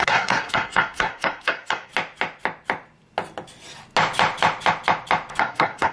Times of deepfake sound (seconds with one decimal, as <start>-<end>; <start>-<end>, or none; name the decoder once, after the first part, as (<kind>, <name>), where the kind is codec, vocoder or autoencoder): 0.0-1.9 (codec, SNAC); 5.4-5.9